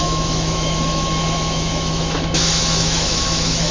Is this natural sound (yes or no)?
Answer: no